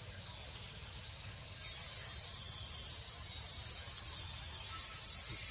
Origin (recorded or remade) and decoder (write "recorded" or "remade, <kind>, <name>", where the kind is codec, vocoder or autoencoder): recorded